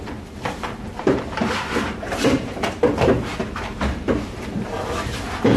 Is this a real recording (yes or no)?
no